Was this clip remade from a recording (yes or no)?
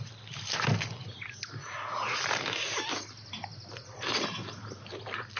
no